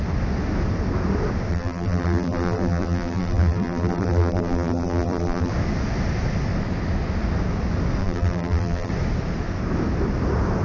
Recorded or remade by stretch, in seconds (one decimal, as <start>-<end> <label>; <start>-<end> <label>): 0.0-1.5 recorded; 1.5-5.5 remade; 5.5-8.0 recorded; 8.0-8.9 remade; 8.9-10.6 recorded